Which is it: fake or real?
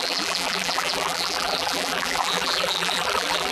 fake